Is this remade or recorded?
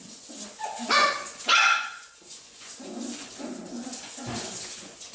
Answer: remade